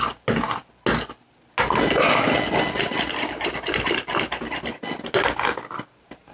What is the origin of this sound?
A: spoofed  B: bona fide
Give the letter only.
B